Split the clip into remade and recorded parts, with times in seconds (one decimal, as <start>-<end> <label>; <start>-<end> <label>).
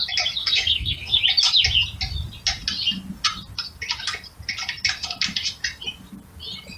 0.0-0.4 recorded; 0.4-1.2 remade; 1.2-6.8 recorded